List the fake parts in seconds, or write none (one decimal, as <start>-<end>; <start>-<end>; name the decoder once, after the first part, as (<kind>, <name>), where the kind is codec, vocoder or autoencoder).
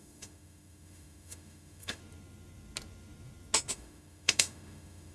0.0-2.0 (autoencoder, DAC-VAE); 3.7-5.1